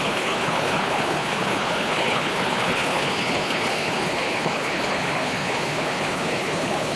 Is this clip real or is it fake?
fake